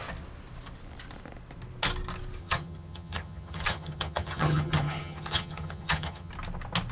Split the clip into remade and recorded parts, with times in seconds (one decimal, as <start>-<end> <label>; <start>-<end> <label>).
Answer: 0.0-2.4 recorded; 2.4-6.3 remade; 6.3-6.9 recorded